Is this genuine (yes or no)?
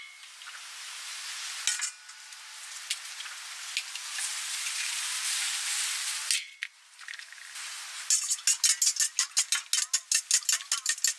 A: yes